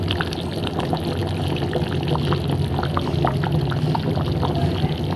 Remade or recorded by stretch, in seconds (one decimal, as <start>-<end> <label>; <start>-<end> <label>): 0.0-1.2 remade; 1.2-4.3 recorded; 4.3-5.2 remade

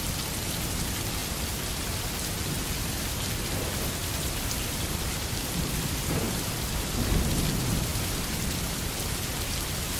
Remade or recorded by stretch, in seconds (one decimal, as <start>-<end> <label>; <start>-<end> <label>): 0.0-4.0 recorded; 4.0-7.4 remade; 7.4-7.9 recorded; 7.9-8.6 remade; 8.6-10.0 recorded

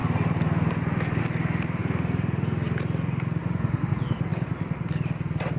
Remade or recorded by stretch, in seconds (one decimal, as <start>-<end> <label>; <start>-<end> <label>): 0.0-1.2 remade; 1.2-4.3 recorded; 4.3-5.6 remade

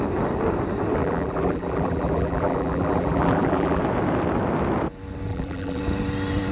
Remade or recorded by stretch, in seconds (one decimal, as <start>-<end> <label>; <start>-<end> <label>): 0.0-1.0 recorded; 1.0-3.8 remade; 3.8-5.3 recorded; 5.3-5.8 remade; 5.8-6.5 recorded

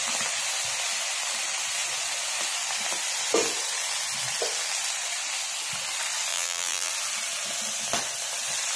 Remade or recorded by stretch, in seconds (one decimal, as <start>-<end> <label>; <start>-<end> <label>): 0.0-6.3 recorded; 6.3-6.9 remade; 6.9-8.8 recorded